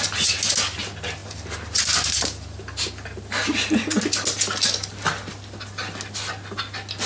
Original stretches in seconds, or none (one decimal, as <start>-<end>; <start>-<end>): 0.0-7.1